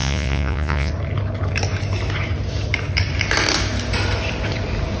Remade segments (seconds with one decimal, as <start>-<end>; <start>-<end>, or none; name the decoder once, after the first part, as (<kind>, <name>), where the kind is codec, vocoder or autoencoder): 0.0-0.9 (vocoder, Vocos)